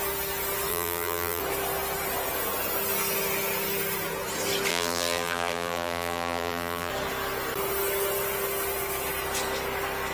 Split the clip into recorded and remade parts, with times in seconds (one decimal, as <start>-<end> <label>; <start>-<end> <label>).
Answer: 0.0-0.7 recorded; 0.7-1.4 remade; 1.4-4.7 recorded; 4.7-6.9 remade; 6.9-10.1 recorded